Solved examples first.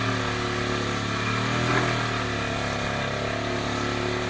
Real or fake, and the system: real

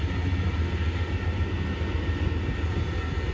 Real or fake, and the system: real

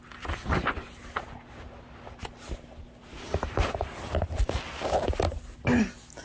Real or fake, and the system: real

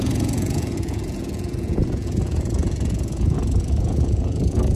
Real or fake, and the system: fake, vocoder, Vocos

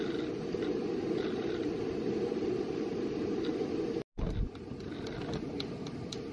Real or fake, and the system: real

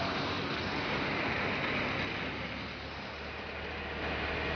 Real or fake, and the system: real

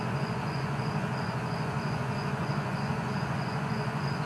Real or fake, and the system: fake, vocoder, Vocos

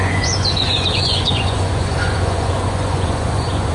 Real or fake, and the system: fake, vocoder, Vocos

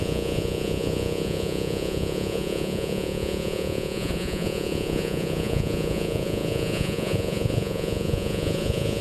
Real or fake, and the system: fake, vocoder, Vocos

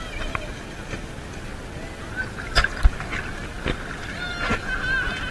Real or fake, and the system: real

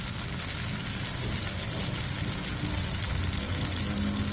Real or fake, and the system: real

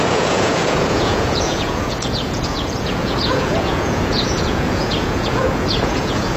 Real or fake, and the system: fake, vocoder, Vocos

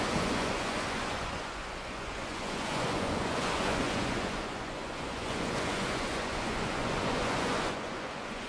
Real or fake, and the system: fake, vocoder, Vocos